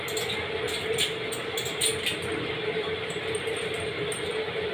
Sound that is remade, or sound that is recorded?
recorded